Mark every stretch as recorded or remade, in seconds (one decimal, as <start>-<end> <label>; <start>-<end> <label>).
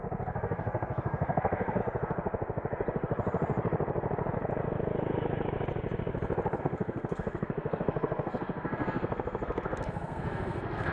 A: 0.0-1.8 remade; 1.8-6.6 recorded; 6.6-10.9 remade